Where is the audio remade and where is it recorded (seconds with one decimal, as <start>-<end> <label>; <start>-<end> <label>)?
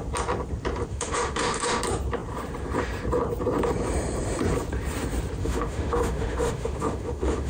0.0-0.9 recorded; 0.9-1.8 remade; 1.8-5.4 recorded; 5.4-7.5 remade